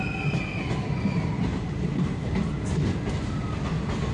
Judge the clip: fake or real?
real